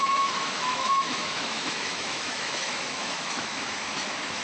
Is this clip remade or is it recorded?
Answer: remade